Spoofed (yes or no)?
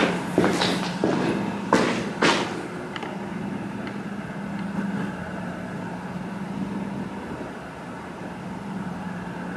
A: no